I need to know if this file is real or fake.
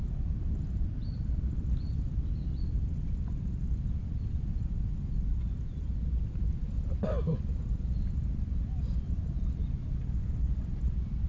fake